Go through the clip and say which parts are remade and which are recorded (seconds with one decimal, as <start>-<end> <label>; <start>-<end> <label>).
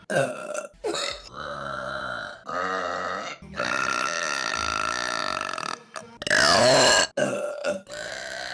0.0-0.4 recorded; 0.4-2.0 remade; 2.0-7.6 recorded; 7.6-8.1 remade; 8.1-8.5 recorded